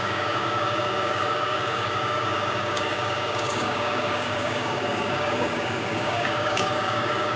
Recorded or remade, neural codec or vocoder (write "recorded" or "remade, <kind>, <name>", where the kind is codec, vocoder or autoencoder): remade, codec, DAC